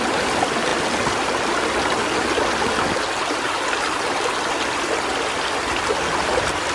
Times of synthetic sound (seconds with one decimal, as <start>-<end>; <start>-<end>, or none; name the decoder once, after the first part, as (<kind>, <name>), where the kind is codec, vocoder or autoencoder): none